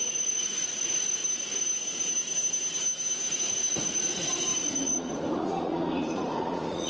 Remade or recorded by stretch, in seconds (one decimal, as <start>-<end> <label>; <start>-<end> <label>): 0.0-1.2 remade; 1.2-3.3 recorded; 3.3-6.9 remade